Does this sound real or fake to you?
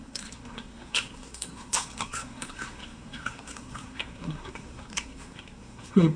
fake